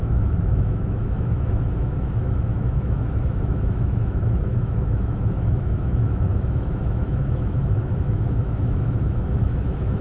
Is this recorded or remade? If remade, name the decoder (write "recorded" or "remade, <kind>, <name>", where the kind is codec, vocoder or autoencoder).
remade, autoencoder, DAC-VAE